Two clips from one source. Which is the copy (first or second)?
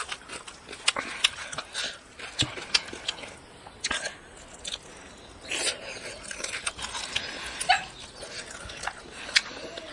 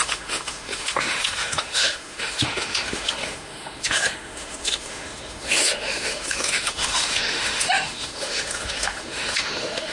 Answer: second